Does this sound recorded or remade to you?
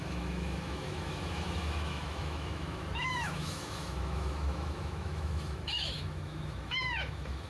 remade